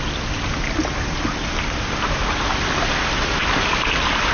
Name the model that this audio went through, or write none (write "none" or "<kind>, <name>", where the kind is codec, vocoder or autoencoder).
none